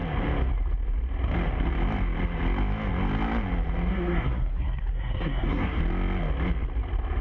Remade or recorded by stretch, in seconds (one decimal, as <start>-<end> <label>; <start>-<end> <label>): 0.0-3.9 recorded; 3.9-5.8 remade; 5.8-7.2 recorded